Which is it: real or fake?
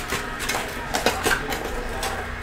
real